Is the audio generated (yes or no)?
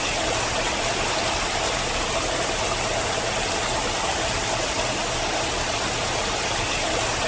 no